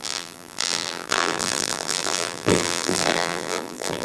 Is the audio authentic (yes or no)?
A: no